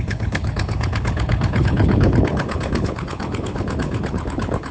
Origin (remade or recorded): remade